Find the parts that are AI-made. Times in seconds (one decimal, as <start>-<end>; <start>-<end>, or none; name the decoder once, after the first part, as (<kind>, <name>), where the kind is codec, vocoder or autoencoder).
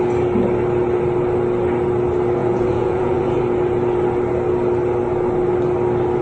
2.4-3.4 (vocoder, Vocos)